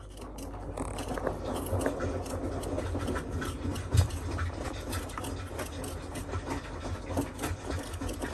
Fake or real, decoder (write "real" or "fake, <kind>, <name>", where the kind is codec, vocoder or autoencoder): real